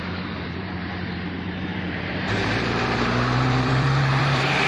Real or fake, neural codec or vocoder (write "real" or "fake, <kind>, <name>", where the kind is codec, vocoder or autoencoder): fake, vocoder, BigVGAN v2